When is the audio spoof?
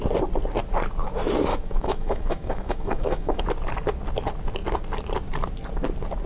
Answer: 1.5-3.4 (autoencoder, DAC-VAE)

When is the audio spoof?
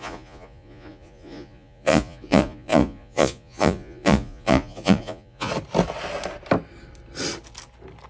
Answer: 0.0-5.5 (vocoder, Vocos)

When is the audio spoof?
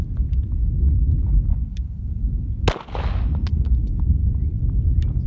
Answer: 1.5-2.2 (codec, HILCodec); 3.5-4.6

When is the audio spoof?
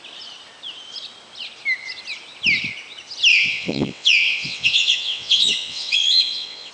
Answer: 3.3-6.7 (vocoder, WaveNeXt)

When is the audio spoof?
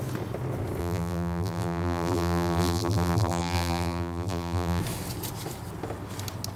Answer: 0.8-4.8 (vocoder, BigVGAN v2)